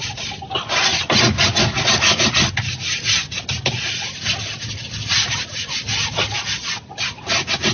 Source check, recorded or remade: recorded